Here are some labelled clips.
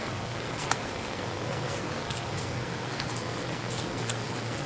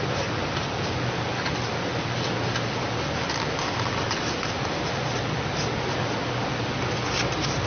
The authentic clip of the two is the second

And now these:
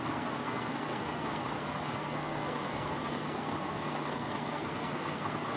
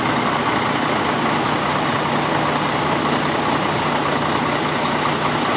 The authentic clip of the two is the second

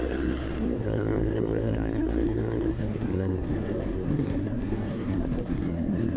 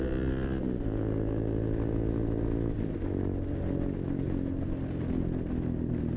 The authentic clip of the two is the second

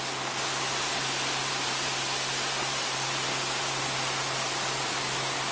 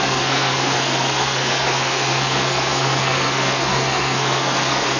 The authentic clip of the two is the first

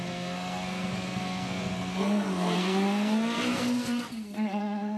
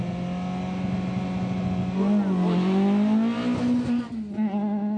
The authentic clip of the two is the second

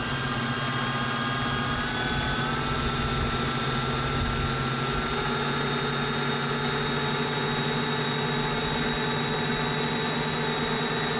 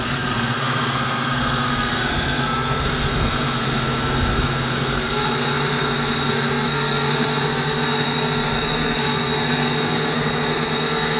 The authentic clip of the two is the first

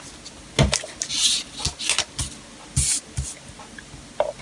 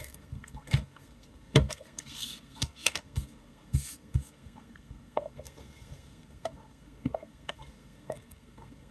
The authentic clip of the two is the first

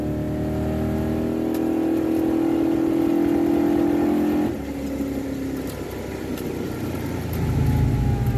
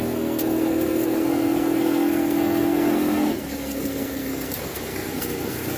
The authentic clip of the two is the first